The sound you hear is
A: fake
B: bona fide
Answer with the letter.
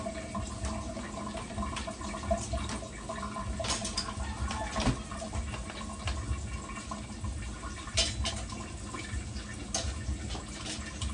B